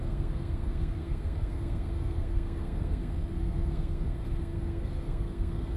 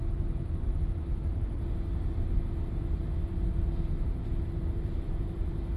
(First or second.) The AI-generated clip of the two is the first